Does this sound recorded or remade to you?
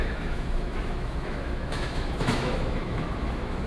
remade